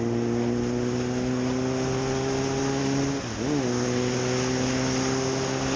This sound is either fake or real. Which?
real